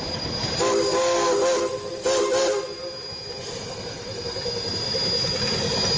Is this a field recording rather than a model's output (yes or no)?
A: yes